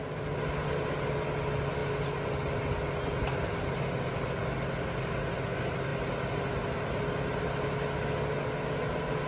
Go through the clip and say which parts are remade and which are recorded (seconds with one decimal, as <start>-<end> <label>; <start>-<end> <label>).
0.0-9.3 recorded